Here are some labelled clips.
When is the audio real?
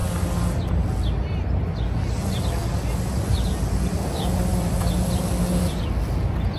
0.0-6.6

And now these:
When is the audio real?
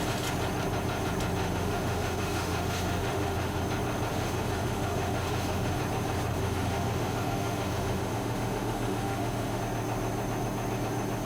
0.0-1.4; 3.6-4.1; 5.8-6.3; 9.6-11.3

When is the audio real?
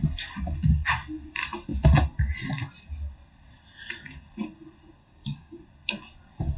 0.0-5.0; 5.6-6.6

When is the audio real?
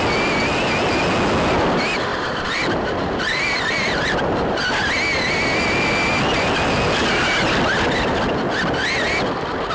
0.0-2.1; 4.6-9.7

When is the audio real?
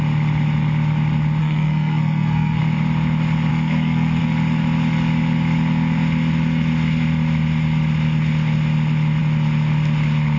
0.0-1.4; 2.6-3.5; 4.2-10.4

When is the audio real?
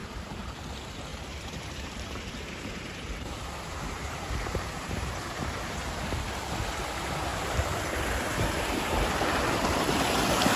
0.6-1.1; 5.9-10.6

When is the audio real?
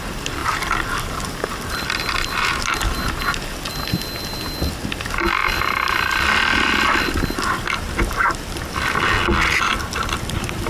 0.0-10.7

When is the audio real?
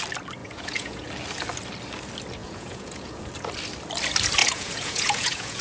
0.0-0.4; 1.1-2.4; 3.2-4.4